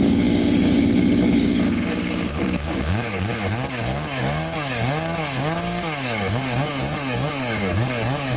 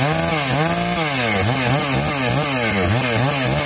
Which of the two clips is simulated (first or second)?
first